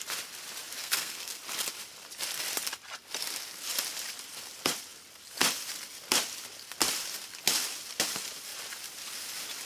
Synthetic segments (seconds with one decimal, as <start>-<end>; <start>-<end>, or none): 0.8-1.4